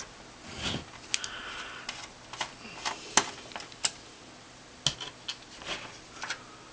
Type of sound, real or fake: real